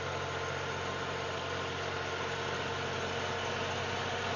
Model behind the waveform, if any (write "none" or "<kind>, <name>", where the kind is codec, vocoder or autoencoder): none